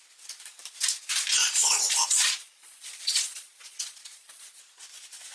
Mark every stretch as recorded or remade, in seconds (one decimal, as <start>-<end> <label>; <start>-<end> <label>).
0.0-1.4 recorded; 1.4-4.6 remade; 4.6-5.3 recorded